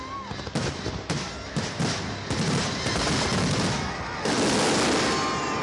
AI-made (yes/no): no